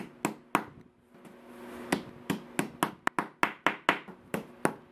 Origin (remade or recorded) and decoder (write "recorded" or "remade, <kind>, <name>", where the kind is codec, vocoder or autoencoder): recorded